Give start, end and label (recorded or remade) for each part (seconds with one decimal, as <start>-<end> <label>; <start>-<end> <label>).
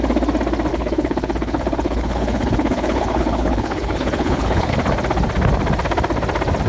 0.0-0.7 recorded; 0.7-4.7 remade; 4.7-6.7 recorded